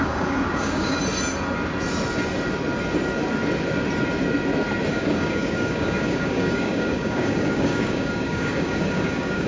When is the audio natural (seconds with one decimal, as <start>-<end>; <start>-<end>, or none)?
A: 1.0-4.9